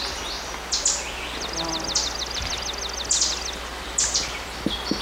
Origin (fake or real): real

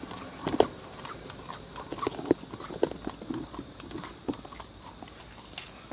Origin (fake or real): real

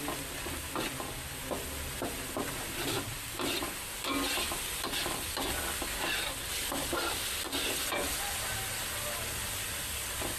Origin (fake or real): real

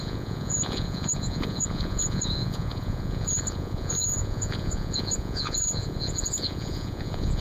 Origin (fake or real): fake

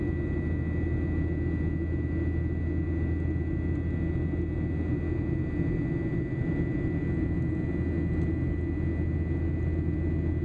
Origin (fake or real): real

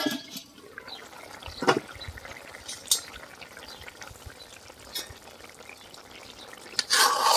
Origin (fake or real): real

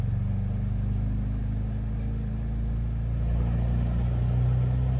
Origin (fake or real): real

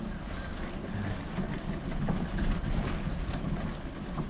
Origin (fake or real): real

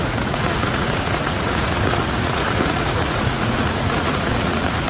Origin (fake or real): fake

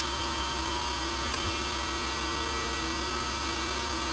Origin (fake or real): real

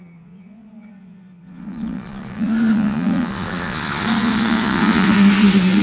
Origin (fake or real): fake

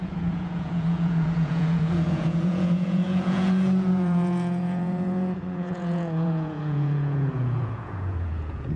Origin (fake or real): fake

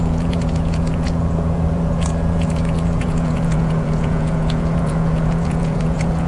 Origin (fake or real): fake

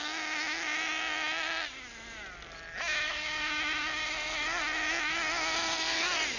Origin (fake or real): real